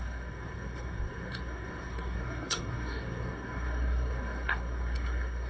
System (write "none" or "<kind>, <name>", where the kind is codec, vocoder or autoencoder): codec, SNAC